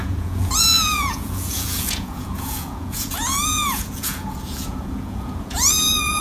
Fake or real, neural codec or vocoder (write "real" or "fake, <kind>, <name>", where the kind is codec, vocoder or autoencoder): fake, vocoder, Vocos